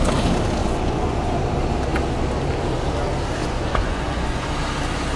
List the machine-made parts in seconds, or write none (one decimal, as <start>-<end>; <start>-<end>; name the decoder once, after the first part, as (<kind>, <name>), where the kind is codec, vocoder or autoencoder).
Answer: 0.6-1.2 (vocoder, Vocos); 3.4-4.5